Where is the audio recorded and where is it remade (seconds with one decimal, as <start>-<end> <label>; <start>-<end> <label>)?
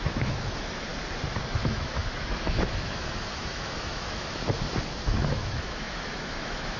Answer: 0.0-0.9 remade; 0.9-1.5 recorded; 1.5-4.4 remade; 4.4-4.9 recorded; 4.9-6.8 remade